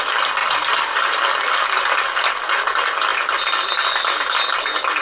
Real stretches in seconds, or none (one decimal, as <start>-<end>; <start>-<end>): 0.0-0.4; 1.9-5.0